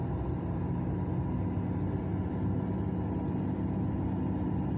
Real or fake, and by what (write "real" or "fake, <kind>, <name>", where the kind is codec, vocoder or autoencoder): real